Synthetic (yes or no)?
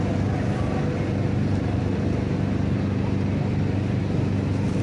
no